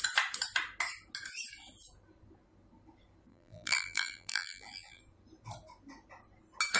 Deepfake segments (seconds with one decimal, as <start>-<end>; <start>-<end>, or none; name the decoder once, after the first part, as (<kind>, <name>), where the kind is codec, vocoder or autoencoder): 3.3-5.0 (vocoder, BigVGAN v2)